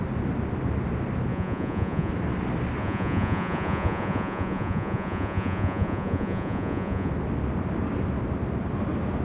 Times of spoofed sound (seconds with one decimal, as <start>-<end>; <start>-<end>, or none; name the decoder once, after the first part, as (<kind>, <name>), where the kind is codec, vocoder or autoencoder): 1.3-2.1 (vocoder, Vocos); 2.8-7.1